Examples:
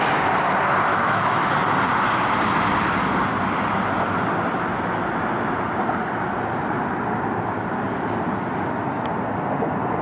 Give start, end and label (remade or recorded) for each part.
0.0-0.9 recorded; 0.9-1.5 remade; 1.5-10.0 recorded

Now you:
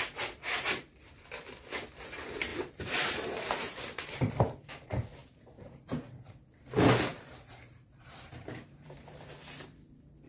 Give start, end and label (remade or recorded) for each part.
0.0-2.5 recorded; 2.5-4.7 remade; 4.7-5.2 recorded; 5.2-6.3 remade; 6.3-7.1 recorded; 7.1-9.3 remade; 9.3-10.3 recorded

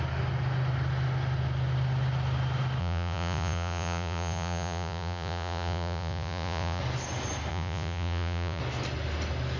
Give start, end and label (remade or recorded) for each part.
0.0-2.8 recorded; 2.8-6.8 remade; 6.8-7.5 recorded; 7.5-8.6 remade; 8.6-9.6 recorded

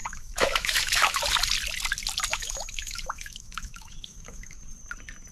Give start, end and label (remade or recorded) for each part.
0.0-1.2 remade; 1.2-2.3 recorded; 2.3-4.6 remade; 4.6-5.3 recorded

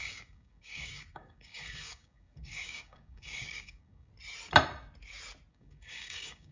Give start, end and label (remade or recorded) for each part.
0.0-4.1 remade; 4.1-5.5 recorded; 5.5-6.5 remade

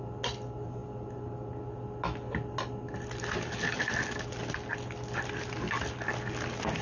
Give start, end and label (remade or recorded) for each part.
0.0-6.8 recorded

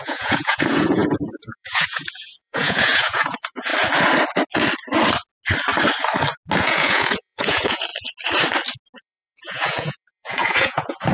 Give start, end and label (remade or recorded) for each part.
0.0-3.7 remade; 3.7-6.6 recorded; 6.6-7.9 remade; 7.9-9.0 recorded; 9.0-11.1 remade

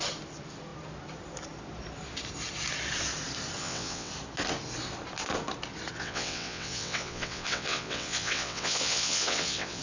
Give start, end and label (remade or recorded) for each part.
0.0-3.6 recorded; 3.6-4.1 remade; 4.1-6.0 recorded; 6.0-9.8 remade